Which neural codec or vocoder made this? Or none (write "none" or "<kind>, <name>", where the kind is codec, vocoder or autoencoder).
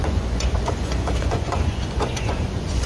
vocoder, Vocos